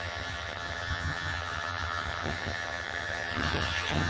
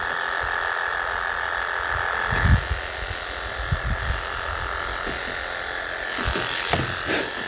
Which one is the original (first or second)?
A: second